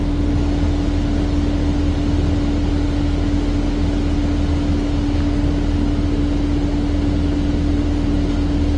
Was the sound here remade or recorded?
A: recorded